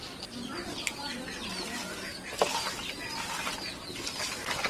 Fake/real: real